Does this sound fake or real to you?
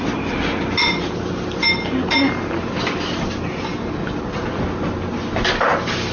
real